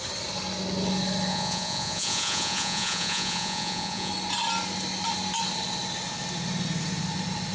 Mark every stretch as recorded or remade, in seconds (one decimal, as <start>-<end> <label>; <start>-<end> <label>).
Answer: 0.0-1.3 recorded; 1.3-4.1 remade; 4.1-7.5 recorded